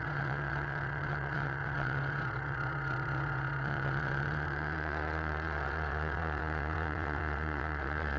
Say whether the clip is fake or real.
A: fake